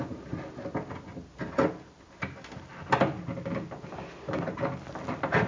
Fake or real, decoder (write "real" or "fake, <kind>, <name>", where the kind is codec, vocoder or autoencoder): real